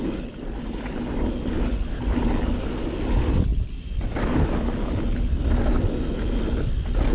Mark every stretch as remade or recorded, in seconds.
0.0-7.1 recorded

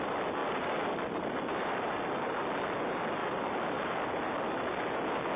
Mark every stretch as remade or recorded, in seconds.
0.0-0.4 recorded; 0.4-2.1 remade; 2.1-3.2 recorded; 3.2-4.7 remade; 4.7-5.4 recorded

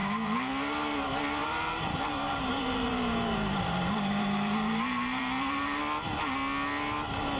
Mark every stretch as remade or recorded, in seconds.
0.0-0.5 remade; 0.5-1.4 recorded; 1.4-5.8 remade; 5.8-7.4 recorded

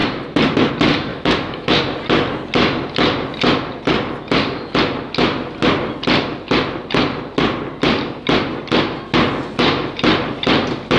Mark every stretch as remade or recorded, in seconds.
0.0-1.1 recorded; 1.1-1.8 remade; 1.8-11.0 recorded